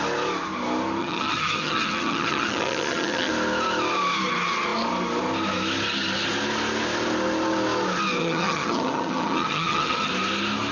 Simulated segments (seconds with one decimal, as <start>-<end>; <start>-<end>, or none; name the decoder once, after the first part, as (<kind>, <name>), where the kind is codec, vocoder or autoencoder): 1.0-3.3 (vocoder, HiFi-GAN); 8.2-10.1